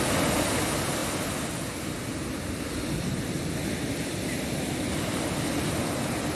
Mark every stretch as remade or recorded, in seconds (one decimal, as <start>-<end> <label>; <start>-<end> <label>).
0.0-6.3 recorded